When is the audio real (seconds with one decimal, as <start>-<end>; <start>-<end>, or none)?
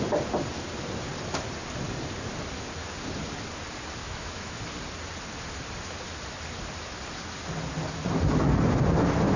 0.0-4.0; 4.6-9.4